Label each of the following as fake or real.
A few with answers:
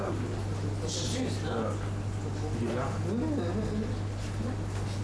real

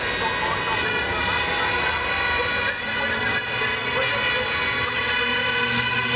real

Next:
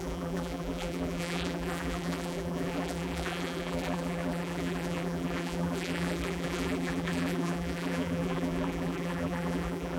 fake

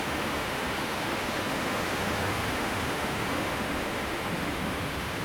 fake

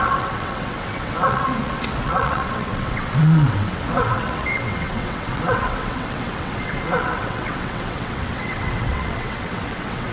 fake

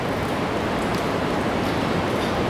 real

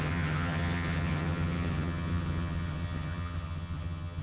fake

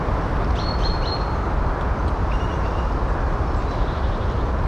real